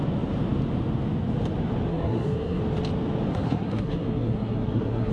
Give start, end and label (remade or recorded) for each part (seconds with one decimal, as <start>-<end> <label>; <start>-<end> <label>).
0.0-1.9 recorded; 1.9-2.6 remade; 2.6-3.3 recorded; 3.3-5.1 remade